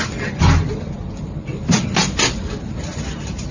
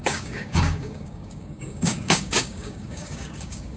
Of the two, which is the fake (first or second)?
second